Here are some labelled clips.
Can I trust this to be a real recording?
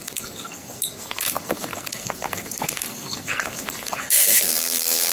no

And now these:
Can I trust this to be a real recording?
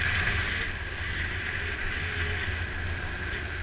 yes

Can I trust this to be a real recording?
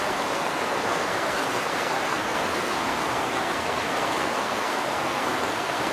no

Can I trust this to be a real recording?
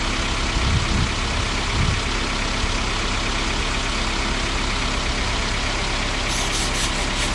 yes